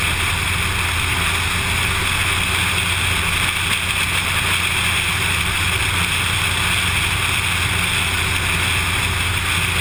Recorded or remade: recorded